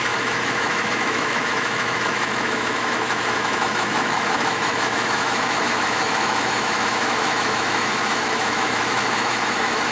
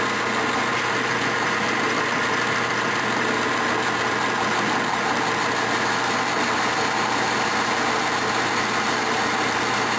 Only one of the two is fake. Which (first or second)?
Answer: first